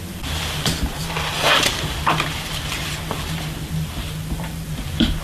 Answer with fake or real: fake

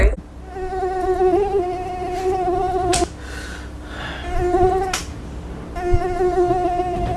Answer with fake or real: real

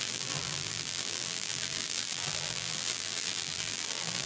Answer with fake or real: fake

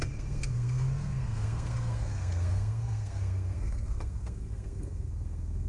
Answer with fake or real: fake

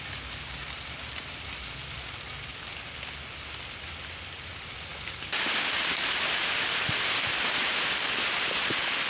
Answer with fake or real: real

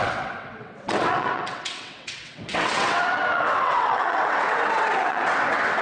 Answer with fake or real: fake